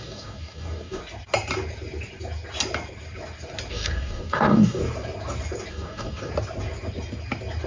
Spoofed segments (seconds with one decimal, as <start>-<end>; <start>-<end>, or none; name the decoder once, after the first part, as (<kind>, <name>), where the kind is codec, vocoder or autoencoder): 0.0-1.0 (codec, DAC); 3.7-4.8; 5.7-6.3

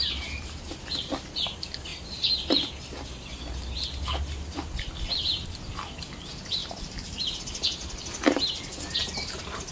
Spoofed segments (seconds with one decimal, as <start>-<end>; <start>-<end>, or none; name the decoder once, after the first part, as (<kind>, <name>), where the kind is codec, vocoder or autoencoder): 6.6-7.4 (vocoder, BigVGAN v2)